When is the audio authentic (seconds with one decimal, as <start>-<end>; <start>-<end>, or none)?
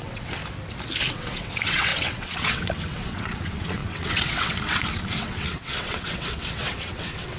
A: 0.4-1.1